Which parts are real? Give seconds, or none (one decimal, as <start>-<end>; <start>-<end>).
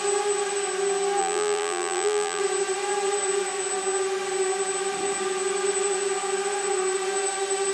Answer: 0.0-1.2; 2.4-7.7